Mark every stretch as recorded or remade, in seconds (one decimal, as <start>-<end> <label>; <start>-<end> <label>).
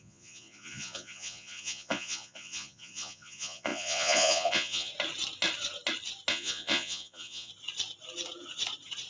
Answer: 0.0-4.9 remade; 4.9-6.3 recorded; 6.3-7.5 remade; 7.5-9.1 recorded